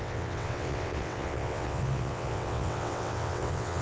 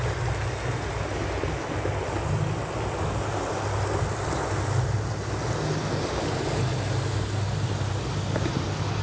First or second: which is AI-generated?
first